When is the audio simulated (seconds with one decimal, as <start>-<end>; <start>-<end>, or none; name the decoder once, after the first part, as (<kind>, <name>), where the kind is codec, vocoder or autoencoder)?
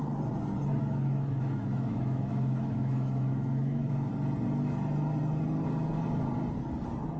0.8-4.1 (autoencoder, DAC-VAE)